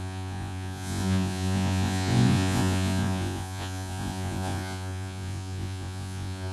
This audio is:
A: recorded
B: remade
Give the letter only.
B